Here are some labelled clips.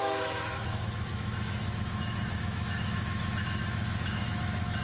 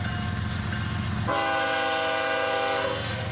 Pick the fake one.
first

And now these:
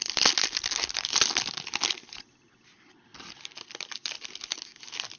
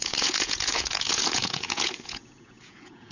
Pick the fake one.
second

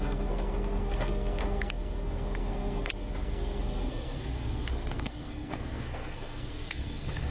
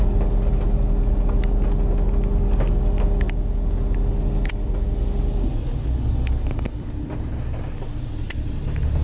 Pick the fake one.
first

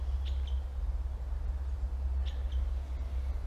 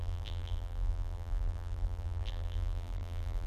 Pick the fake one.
second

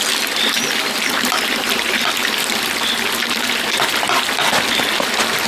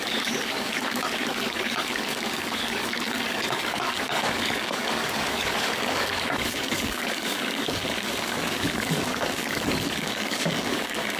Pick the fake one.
second